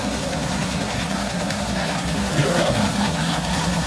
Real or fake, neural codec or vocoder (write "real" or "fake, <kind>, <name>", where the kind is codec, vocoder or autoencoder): fake, codec, SNAC